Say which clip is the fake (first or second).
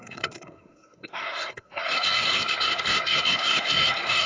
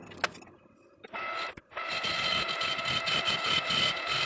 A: first